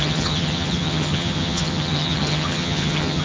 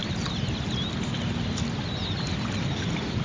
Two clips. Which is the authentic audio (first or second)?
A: second